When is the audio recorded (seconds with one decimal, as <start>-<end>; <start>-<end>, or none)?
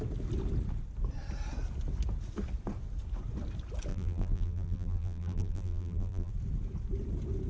0.0-3.9; 6.3-7.5